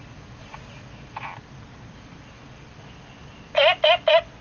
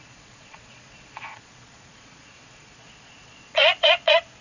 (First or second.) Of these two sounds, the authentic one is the first